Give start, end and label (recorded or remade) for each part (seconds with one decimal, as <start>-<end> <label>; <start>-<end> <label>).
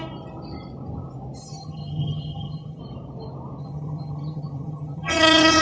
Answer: 0.0-1.4 recorded; 1.4-2.8 remade; 2.8-3.6 recorded; 3.6-5.6 remade